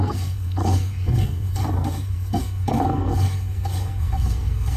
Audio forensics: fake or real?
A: fake